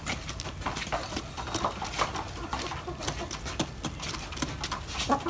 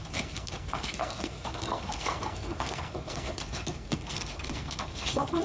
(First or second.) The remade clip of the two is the second